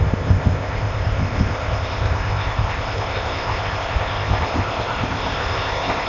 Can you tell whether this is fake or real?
fake